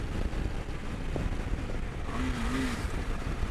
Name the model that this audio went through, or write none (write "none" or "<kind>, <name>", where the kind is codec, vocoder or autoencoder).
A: none